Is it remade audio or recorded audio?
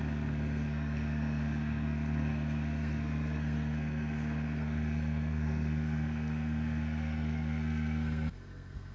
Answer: remade